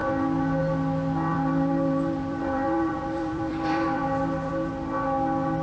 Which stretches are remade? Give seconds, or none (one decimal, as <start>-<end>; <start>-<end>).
1.3-4.7